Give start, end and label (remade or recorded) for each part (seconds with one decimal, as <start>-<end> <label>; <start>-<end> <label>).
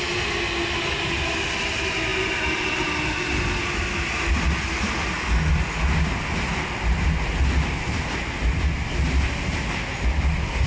0.0-10.7 recorded